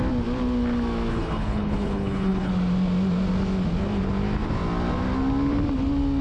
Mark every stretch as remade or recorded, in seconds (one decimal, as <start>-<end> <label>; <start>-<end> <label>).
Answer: 0.0-1.1 recorded; 1.1-2.5 remade; 2.5-6.2 recorded